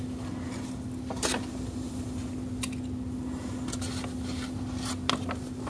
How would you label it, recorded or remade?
recorded